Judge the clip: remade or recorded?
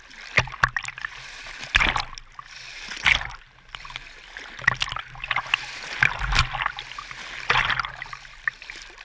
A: recorded